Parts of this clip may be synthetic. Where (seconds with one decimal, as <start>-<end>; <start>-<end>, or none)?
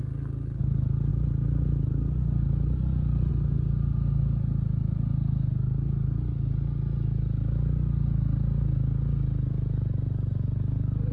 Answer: none